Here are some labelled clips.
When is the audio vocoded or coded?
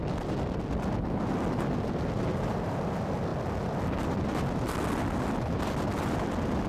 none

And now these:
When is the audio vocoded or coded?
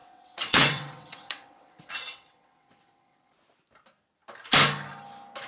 0.0-3.3 (vocoder, WaveNeXt)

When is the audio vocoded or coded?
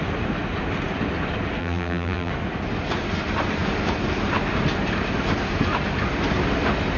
1.6-2.3 (vocoder, BigVGAN v2)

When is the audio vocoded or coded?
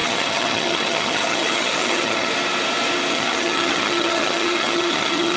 0.0-2.3 (vocoder, HiFi-GAN); 3.1-5.4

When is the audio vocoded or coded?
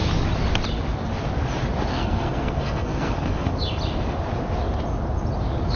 1.9-3.5 (codec, SNAC)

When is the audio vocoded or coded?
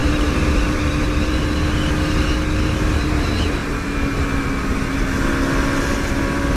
0.0-1.4 (vocoder, BigVGAN v2)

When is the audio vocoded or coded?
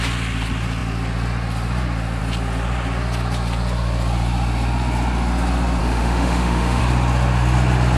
5.8-6.8 (autoencoder, DAC-VAE)